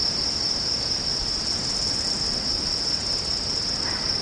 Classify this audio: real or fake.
real